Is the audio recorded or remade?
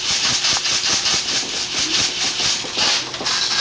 recorded